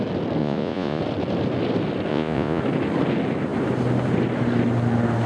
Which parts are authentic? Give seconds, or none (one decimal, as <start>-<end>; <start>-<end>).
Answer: 0.0-0.4; 1.0-2.1; 2.6-5.3